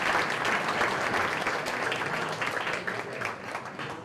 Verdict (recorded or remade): recorded